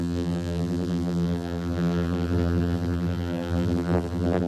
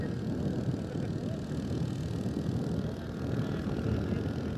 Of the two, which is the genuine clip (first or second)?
second